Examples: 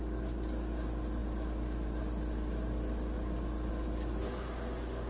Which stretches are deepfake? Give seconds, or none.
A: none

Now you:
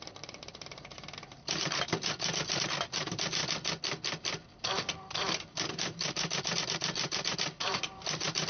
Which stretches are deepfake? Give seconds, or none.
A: 0.0-3.4 (vocoder, BigVGAN v2); 4.6-8.5

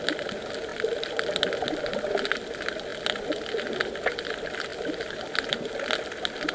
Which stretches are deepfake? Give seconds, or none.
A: 0.7-1.9 (vocoder, BigVGAN v2); 4.7-5.5

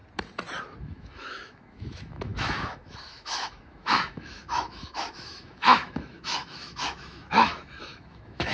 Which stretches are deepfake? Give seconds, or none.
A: 0.8-8.5 (autoencoder, DAC-VAE)